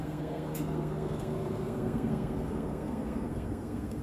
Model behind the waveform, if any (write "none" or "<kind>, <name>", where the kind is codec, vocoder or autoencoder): codec, SNAC